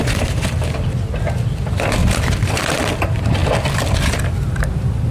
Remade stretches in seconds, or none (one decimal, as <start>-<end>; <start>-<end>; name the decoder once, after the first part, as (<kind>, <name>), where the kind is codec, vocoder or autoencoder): 2.0-2.5 (vocoder, BigVGAN v2)